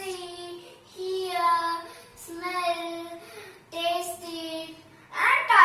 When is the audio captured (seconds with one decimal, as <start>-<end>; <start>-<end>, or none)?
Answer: 0.0-5.6